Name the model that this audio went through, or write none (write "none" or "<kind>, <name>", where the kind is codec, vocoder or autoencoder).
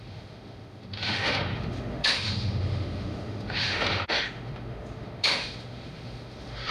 autoencoder, DAC-VAE